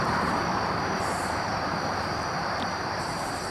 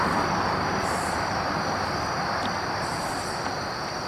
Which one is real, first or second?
second